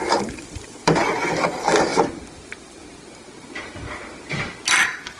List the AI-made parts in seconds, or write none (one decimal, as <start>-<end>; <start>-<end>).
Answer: 0.0-1.0; 1.5-1.9